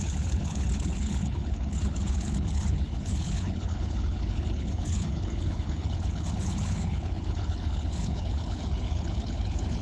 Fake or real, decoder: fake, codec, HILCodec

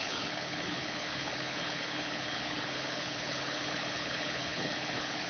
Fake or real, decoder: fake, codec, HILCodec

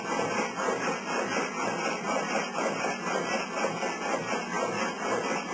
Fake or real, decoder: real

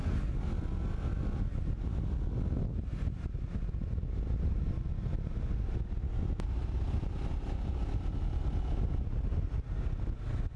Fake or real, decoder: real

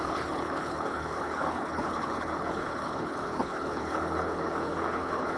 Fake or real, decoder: fake, codec, HILCodec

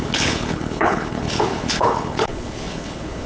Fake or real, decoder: fake, codec, HILCodec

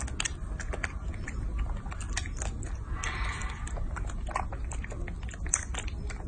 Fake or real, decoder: real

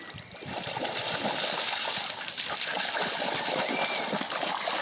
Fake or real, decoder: real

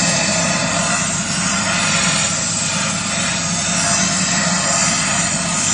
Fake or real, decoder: real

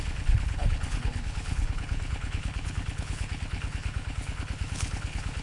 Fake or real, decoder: fake, codec, HILCodec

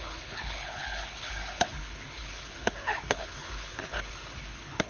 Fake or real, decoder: fake, codec, HILCodec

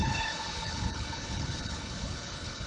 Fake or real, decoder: fake, codec, HILCodec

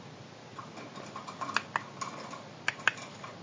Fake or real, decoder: real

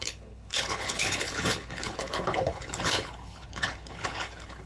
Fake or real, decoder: fake, codec, HILCodec